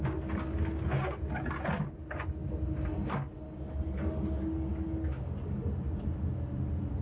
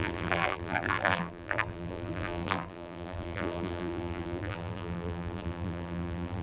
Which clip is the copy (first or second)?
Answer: second